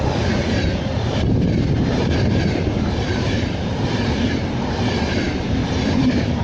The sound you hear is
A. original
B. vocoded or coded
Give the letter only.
B